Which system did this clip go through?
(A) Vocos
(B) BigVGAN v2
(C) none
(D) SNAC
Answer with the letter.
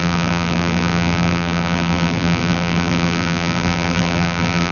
B